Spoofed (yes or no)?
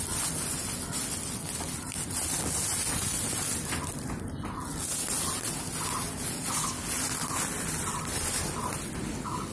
no